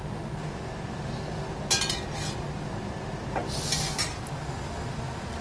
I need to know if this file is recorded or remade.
recorded